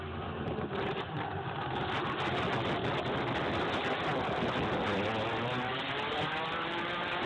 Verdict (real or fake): real